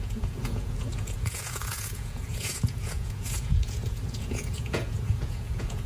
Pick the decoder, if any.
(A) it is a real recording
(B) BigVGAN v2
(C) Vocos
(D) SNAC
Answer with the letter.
C